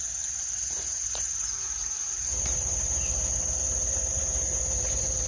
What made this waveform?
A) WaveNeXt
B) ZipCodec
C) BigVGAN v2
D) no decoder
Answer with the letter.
C